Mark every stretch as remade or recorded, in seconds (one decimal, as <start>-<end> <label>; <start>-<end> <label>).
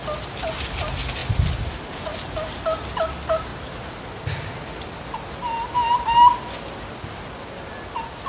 0.0-8.3 recorded